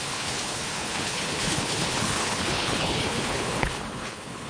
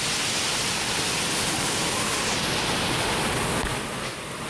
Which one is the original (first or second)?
second